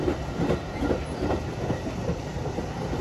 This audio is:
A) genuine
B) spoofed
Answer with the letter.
A